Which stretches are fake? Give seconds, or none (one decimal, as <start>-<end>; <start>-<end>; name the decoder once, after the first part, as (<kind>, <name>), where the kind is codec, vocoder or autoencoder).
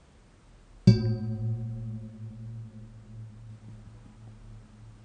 none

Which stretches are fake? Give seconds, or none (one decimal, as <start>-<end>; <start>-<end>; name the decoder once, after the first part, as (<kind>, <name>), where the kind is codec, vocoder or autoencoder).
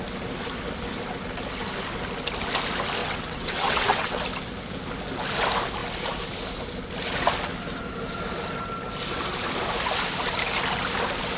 3.0-4.2 (vocoder, WaveNeXt)